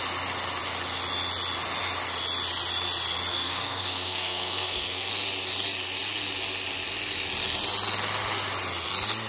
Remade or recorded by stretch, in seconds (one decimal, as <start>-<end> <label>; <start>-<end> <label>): 0.0-3.3 recorded; 3.3-5.1 remade; 5.1-9.3 recorded